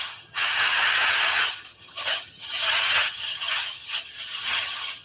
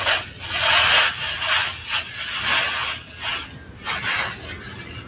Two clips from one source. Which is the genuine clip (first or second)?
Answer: second